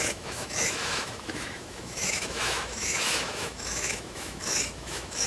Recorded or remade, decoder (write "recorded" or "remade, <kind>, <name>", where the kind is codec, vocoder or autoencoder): remade, autoencoder, DAC-VAE